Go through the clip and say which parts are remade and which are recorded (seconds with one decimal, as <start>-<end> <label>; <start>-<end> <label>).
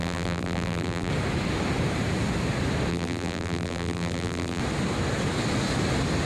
0.0-1.1 remade; 1.1-2.9 recorded; 2.9-4.6 remade; 4.6-6.3 recorded